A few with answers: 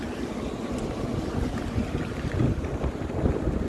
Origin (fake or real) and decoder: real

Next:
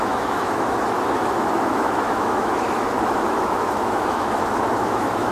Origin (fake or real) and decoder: fake, autoencoder, DAC-VAE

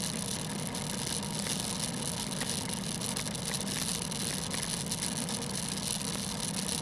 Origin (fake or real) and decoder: real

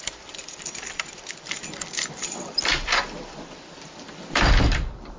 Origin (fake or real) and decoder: fake, vocoder, BigVGAN v2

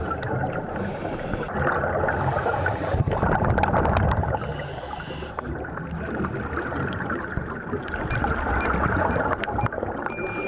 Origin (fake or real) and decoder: real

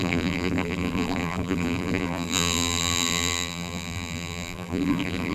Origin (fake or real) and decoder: fake, vocoder, BigVGAN v2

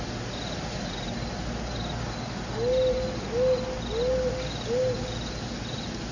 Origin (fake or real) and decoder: real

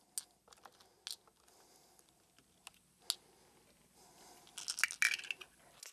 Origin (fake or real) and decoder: real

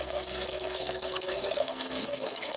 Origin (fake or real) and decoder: fake, codec, SNAC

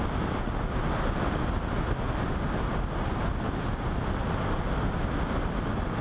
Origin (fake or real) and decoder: real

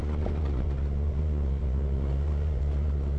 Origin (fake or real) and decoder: fake, vocoder, Vocos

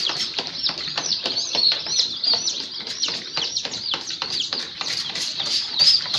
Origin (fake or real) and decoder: fake, vocoder, BigVGAN v2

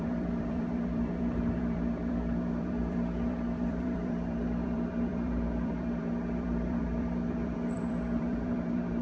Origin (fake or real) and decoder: fake, vocoder, BigVGAN v2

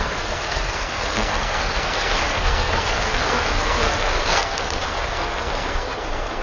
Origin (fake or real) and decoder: fake, codec, SNAC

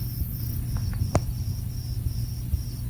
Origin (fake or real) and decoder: real